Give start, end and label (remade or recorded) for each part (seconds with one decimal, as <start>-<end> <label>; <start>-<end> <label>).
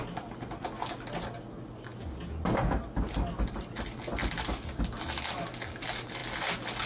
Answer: 0.0-6.9 recorded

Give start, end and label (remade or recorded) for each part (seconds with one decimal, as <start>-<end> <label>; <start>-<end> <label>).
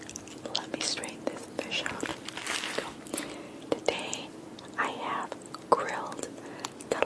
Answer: 0.0-7.0 recorded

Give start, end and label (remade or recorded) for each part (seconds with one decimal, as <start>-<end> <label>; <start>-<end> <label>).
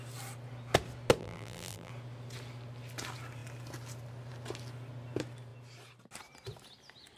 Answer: 0.0-1.2 recorded; 1.2-1.9 remade; 1.9-7.2 recorded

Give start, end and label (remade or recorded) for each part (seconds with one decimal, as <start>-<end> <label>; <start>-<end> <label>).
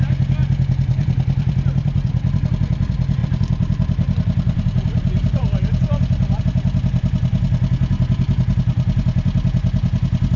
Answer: 0.0-0.4 recorded; 0.4-2.5 remade; 2.5-3.2 recorded; 3.2-6.4 remade; 6.4-10.4 recorded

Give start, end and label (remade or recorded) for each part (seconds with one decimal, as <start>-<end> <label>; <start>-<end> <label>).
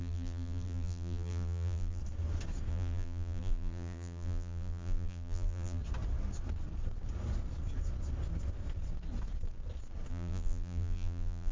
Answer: 0.0-2.0 remade; 2.0-2.7 recorded; 2.7-5.8 remade; 5.8-10.1 recorded; 10.1-11.5 remade